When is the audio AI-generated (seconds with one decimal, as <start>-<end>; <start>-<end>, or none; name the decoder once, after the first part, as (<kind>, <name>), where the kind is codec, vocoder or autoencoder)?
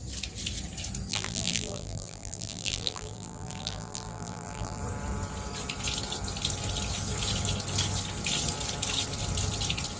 1.1-4.8 (vocoder, BigVGAN v2)